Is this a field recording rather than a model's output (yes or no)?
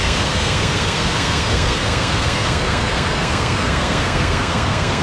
no